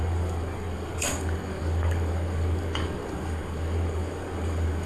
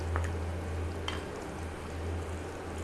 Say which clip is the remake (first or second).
first